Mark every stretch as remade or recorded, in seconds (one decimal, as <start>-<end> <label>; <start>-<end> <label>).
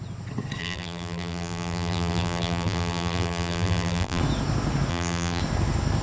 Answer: 0.0-0.6 recorded; 0.6-4.2 remade; 4.2-4.9 recorded; 4.9-5.4 remade; 5.4-6.0 recorded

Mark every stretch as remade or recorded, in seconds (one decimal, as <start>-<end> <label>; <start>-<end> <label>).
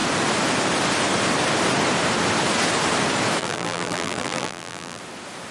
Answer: 0.0-3.4 recorded; 3.4-5.0 remade; 5.0-5.5 recorded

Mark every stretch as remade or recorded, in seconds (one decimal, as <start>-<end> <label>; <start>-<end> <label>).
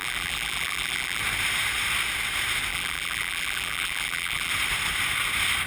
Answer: 0.0-1.2 remade; 1.2-2.7 recorded; 2.7-4.5 remade; 4.5-5.7 recorded